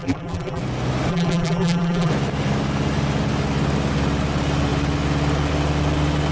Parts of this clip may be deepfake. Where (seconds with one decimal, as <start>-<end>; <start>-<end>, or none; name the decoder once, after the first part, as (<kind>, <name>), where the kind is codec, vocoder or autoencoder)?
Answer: 0.0-0.6 (vocoder, BigVGAN v2); 1.1-2.1